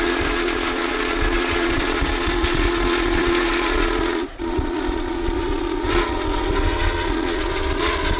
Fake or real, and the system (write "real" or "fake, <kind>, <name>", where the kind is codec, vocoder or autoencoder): fake, vocoder, Vocos